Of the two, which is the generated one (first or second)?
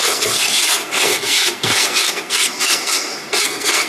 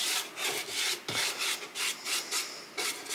first